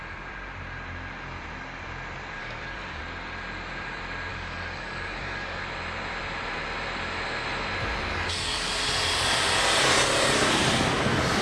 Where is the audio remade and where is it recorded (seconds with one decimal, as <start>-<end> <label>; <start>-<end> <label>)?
0.0-2.4 recorded; 2.4-3.0 remade; 3.0-4.3 recorded; 4.3-5.6 remade; 5.6-8.1 recorded; 8.1-8.7 remade; 8.7-11.4 recorded